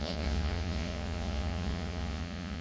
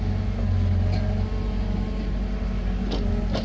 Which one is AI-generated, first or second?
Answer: first